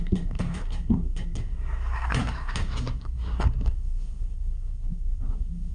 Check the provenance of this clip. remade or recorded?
remade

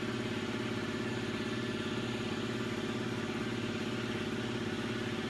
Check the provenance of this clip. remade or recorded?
recorded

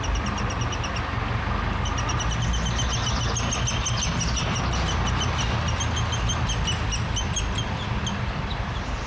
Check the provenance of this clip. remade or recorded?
recorded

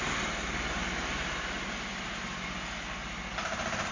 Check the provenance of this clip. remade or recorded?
recorded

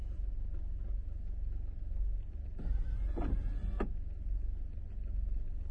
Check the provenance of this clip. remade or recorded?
recorded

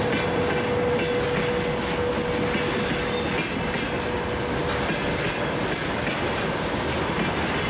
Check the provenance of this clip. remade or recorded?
recorded